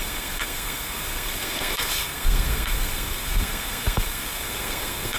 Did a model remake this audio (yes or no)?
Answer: yes